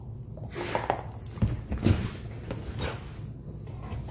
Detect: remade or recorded recorded